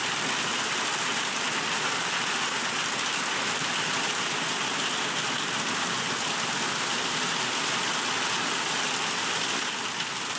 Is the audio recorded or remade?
recorded